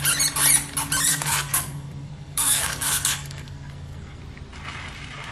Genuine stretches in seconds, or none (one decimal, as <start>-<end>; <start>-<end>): 0.0-1.1; 4.2-5.3